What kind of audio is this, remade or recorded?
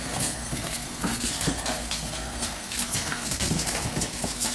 remade